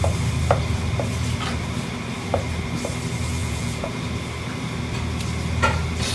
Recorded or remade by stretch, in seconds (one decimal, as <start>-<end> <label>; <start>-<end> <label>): 0.0-3.4 recorded; 3.4-4.0 remade; 4.0-6.1 recorded